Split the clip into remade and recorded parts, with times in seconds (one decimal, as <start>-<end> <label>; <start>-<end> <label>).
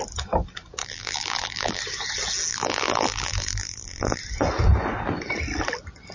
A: 0.0-0.8 recorded; 0.8-1.8 remade; 1.8-2.5 recorded; 2.5-4.2 remade; 4.2-6.1 recorded